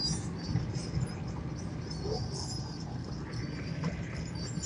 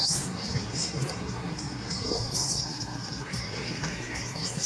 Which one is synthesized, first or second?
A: second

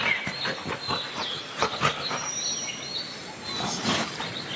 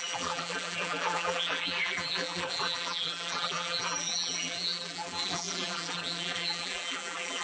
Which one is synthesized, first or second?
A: second